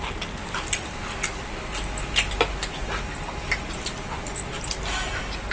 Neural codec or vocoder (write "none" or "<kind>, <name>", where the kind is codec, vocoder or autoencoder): none